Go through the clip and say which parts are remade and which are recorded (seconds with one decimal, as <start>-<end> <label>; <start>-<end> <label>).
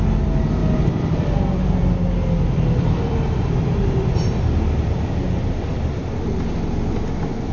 0.0-0.6 recorded; 0.6-4.4 remade; 4.4-7.5 recorded